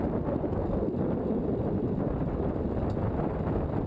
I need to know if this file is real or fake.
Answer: real